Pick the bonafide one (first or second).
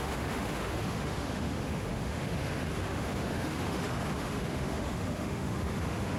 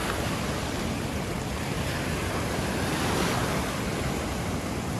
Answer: second